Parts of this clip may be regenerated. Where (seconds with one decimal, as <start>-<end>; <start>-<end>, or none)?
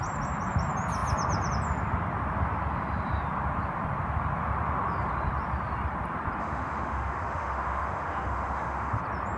6.4-9.0